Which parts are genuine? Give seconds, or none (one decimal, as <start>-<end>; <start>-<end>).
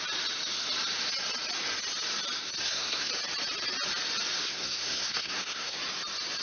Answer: 0.0-2.6; 3.1-4.4; 5.8-6.4